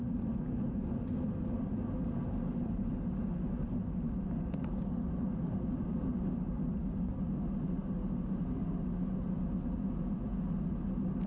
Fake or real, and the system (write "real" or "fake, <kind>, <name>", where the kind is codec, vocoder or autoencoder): real